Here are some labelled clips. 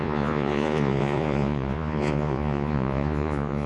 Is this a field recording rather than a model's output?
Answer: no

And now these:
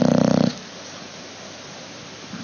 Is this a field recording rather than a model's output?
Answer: yes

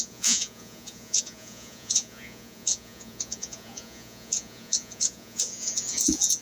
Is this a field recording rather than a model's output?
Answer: no